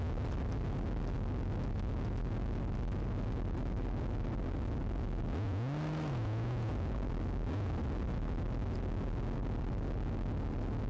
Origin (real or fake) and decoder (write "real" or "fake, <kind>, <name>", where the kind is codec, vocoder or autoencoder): real